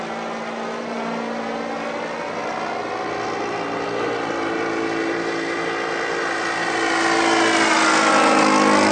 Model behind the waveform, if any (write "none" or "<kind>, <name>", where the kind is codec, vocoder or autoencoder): none